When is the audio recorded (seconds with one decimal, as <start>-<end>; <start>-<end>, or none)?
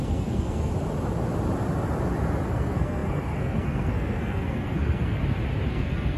0.7-2.5; 5.2-5.7